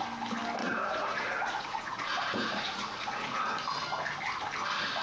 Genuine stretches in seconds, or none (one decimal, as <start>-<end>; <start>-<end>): 0.0-0.6; 3.4-5.0